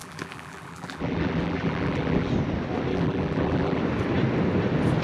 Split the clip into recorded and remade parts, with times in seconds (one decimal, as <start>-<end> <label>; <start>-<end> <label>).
0.0-2.3 remade; 2.3-2.9 recorded; 2.9-3.8 remade; 3.8-5.0 recorded